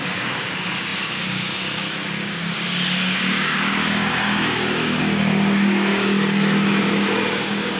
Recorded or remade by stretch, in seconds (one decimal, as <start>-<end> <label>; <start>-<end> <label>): 0.0-7.8 remade